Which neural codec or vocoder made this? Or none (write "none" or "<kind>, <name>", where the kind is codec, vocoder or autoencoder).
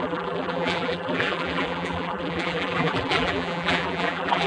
vocoder, BigVGAN v2